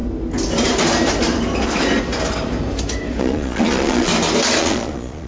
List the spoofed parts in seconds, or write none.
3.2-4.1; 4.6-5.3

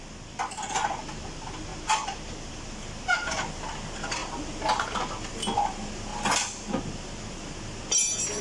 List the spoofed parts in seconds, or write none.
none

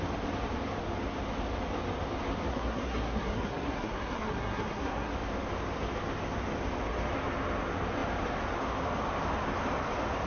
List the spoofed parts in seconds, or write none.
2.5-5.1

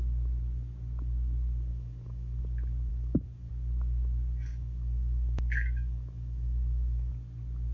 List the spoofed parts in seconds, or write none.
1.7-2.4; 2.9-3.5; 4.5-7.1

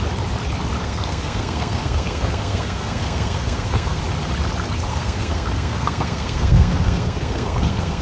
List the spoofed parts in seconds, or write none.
0.8-4.0; 4.9-8.0

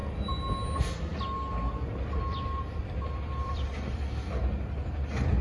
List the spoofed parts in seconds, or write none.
2.2-5.4

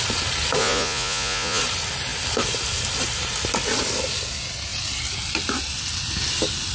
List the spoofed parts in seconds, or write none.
0.6-1.6

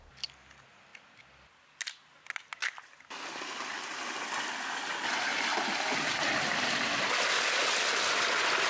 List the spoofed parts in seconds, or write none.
none